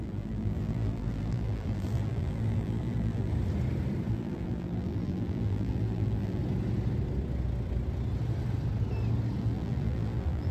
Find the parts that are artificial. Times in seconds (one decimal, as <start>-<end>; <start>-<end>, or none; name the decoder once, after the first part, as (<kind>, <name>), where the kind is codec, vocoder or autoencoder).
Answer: 0.0-3.3 (vocoder, BigVGAN v2); 4.1-6.4; 9.4-10.5